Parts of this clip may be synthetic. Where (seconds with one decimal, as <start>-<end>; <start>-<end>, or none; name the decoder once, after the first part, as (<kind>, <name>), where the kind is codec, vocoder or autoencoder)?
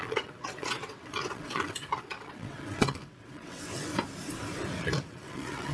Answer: 0.0-3.9 (vocoder, WaveNeXt); 4.8-5.7